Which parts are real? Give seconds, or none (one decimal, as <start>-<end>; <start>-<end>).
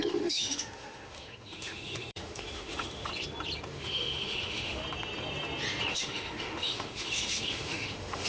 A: 3.1-3.7; 4.8-5.9